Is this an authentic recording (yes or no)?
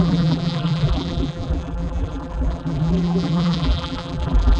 no